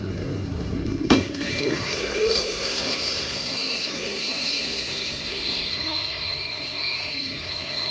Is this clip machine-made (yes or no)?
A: yes